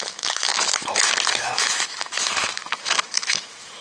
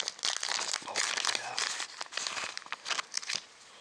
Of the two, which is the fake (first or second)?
first